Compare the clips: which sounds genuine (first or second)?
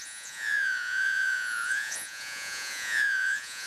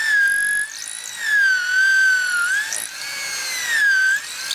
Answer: second